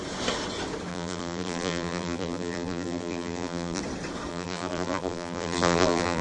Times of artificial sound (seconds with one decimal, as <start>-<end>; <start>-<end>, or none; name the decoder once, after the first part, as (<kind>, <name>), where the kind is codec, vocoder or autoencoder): 0.9-3.8 (vocoder, BigVGAN v2); 4.3-6.2